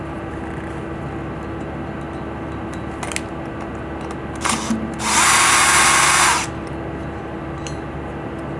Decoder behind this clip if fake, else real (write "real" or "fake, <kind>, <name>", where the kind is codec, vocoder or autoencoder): real